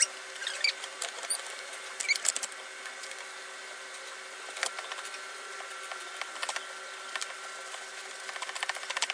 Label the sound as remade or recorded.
recorded